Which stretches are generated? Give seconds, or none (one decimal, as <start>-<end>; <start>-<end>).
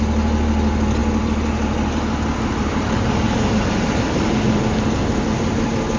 none